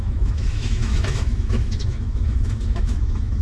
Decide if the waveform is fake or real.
fake